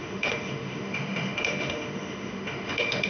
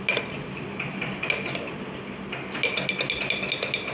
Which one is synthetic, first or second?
first